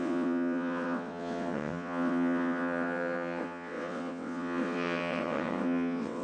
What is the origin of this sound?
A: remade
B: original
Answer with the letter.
A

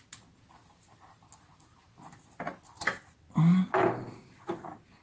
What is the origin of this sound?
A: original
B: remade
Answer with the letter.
A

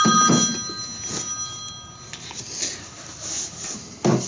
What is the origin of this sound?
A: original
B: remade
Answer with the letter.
A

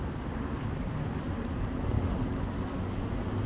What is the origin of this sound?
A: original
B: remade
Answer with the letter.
A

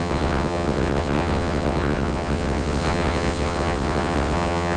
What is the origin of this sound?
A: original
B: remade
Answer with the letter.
B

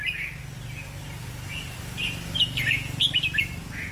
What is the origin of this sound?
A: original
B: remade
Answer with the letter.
A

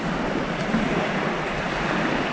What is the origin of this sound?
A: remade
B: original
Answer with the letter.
B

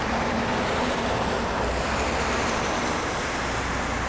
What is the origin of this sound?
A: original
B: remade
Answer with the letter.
A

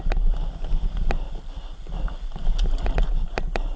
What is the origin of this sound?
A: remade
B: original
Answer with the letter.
B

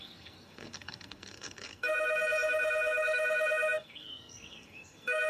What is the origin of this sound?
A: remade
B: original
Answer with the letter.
A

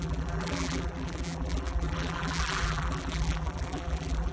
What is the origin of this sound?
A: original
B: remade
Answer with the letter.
B